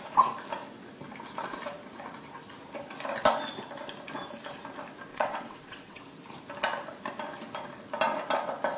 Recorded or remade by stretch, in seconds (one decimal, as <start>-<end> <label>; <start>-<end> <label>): 0.0-5.1 recorded; 5.1-6.0 remade; 6.0-8.8 recorded